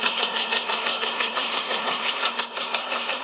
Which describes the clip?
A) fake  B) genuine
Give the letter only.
A